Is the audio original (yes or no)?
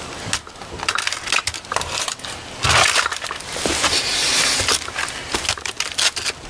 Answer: yes